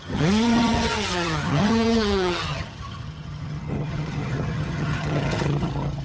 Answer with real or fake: fake